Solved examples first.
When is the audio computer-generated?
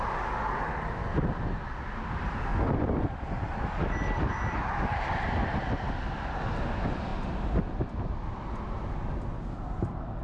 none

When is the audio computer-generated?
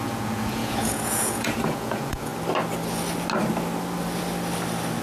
0.0-2.3 (vocoder, Vocos)